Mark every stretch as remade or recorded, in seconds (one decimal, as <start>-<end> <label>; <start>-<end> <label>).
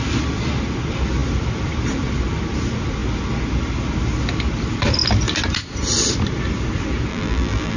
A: 0.0-7.1 recorded; 7.1-7.8 remade